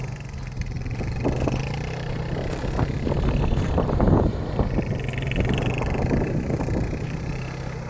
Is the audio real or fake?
real